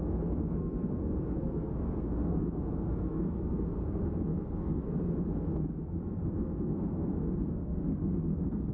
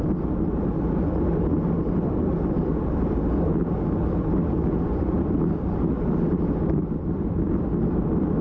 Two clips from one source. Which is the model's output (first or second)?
first